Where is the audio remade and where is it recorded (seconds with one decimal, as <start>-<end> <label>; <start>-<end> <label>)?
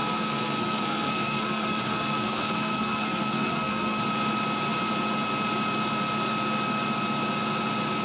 0.0-4.0 remade; 4.0-8.0 recorded